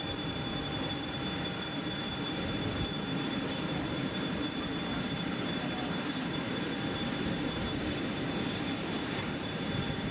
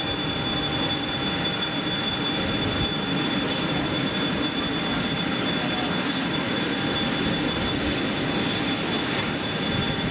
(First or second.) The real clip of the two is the second